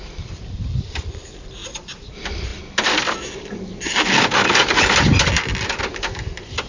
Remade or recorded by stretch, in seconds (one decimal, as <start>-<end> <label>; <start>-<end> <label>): 0.0-6.7 recorded

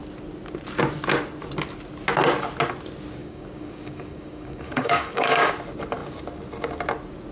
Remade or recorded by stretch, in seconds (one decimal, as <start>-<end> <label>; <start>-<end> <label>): 0.0-3.2 recorded; 3.2-5.5 remade; 5.5-7.3 recorded

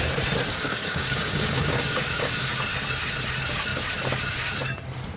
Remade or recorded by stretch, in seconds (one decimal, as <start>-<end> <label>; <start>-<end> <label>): 0.0-0.5 recorded; 0.5-2.5 remade; 2.5-5.2 recorded

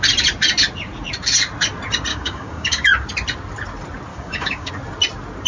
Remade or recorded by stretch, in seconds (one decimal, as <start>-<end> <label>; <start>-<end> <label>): 0.0-2.1 recorded; 2.1-2.9 remade; 2.9-4.1 recorded; 4.1-4.7 remade; 4.7-5.5 recorded